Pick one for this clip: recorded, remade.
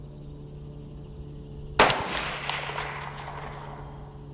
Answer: recorded